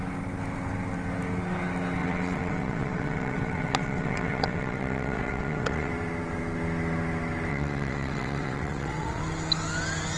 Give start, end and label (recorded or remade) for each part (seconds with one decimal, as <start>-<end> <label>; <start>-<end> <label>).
0.0-2.0 recorded; 2.0-5.9 remade; 5.9-7.5 recorded; 7.5-9.2 remade; 9.2-10.2 recorded